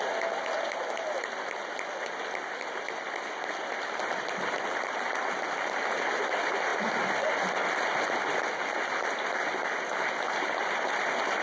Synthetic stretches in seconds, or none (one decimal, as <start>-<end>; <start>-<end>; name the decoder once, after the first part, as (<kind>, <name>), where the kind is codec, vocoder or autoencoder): 6.7-7.7 (vocoder, BigVGAN v2)